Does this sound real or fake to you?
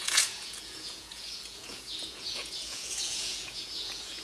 fake